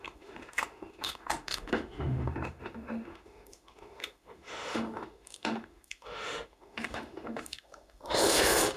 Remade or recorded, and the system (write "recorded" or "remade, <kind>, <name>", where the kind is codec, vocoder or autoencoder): remade, autoencoder, DAC-VAE